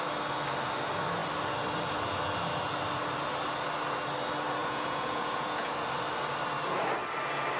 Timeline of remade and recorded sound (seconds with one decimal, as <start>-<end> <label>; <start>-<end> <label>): 0.0-4.6 recorded; 4.6-5.7 remade; 5.7-7.6 recorded